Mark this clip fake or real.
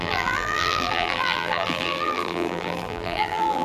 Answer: fake